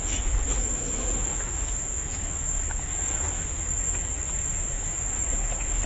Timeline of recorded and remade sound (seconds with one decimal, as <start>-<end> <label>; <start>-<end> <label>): 0.0-5.9 remade